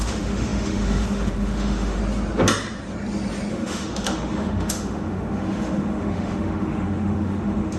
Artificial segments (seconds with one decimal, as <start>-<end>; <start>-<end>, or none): 0.0-2.0; 3.5-7.8